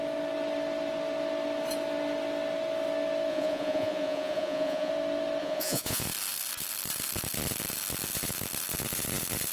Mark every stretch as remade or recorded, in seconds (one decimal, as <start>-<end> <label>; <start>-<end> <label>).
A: 0.0-3.3 recorded; 3.3-4.9 remade; 4.9-5.4 recorded; 5.4-6.0 remade; 6.0-9.5 recorded

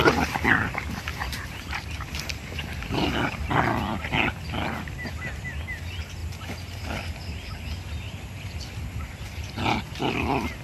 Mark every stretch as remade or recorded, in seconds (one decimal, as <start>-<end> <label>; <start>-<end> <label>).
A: 0.0-10.6 recorded

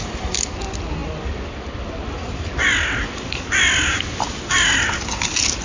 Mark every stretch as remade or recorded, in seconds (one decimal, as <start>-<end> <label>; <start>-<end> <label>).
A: 0.0-5.6 recorded

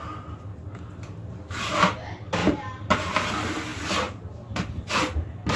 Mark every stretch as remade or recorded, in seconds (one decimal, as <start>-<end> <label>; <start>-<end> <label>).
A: 0.0-0.5 recorded; 0.5-1.7 remade; 1.7-2.4 recorded; 2.4-3.3 remade; 3.3-3.7 recorded; 3.7-4.3 remade; 4.3-5.6 recorded